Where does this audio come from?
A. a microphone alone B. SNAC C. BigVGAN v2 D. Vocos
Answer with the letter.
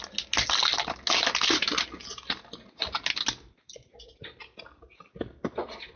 A